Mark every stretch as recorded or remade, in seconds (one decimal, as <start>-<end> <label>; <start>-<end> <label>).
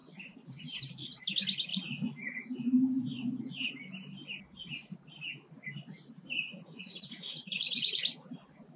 0.0-1.7 recorded; 1.7-3.4 remade; 3.4-6.5 recorded; 6.5-8.0 remade; 8.0-8.8 recorded